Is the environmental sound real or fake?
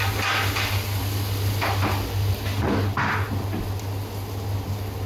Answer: fake